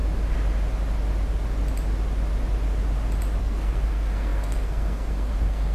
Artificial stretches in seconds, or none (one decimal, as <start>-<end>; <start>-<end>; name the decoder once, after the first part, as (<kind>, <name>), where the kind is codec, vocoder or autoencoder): 3.4-5.7 (codec, SNAC)